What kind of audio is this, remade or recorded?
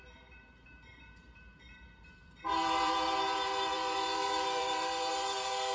remade